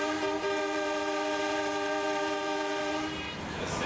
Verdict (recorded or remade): remade